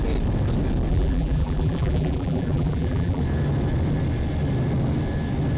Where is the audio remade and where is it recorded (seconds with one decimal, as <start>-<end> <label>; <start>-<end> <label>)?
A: 0.0-0.9 recorded; 0.9-3.2 remade; 3.2-5.6 recorded